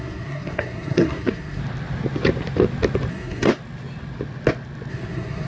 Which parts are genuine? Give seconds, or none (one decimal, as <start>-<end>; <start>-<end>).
1.6-3.1; 3.5-4.9